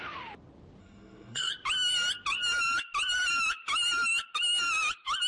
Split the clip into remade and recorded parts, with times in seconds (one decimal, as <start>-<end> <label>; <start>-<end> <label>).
0.0-0.8 recorded; 0.8-1.5 remade; 1.5-5.3 recorded